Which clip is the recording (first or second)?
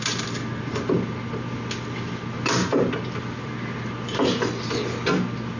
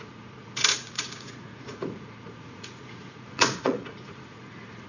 first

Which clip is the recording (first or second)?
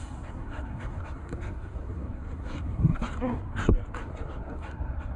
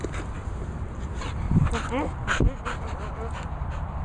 second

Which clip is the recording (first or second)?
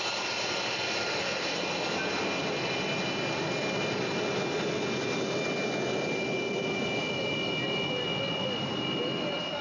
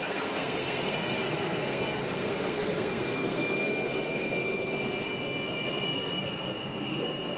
first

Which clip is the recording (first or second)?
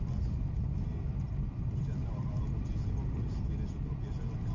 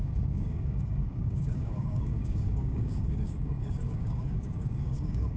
first